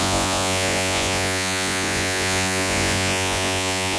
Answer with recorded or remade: remade